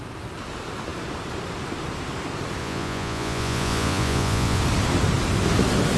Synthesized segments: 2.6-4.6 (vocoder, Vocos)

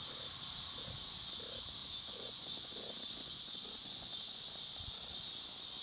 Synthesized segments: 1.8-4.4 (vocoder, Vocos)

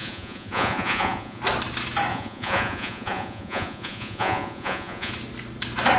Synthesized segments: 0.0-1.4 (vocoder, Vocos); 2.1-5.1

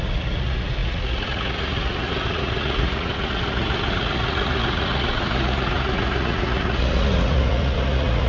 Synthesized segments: 0.0-8.3 (vocoder, Vocos)